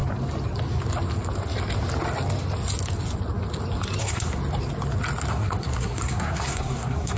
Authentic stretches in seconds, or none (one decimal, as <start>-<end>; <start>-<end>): 0.0-4.0; 4.4-5.3